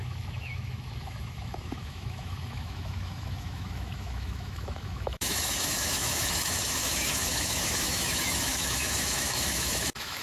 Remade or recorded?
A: remade